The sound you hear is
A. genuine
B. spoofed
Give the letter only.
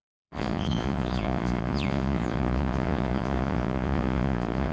B